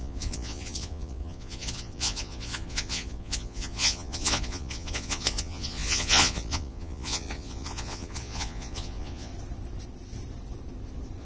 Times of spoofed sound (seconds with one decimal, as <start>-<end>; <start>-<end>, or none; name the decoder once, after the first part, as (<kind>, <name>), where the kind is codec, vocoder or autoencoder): 0.0-9.3 (vocoder, Vocos)